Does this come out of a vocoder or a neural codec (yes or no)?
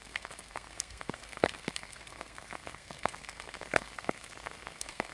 yes